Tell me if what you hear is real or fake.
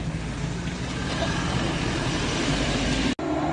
real